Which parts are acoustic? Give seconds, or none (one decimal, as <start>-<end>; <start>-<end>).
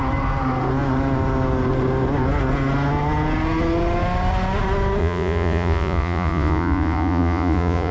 0.0-5.0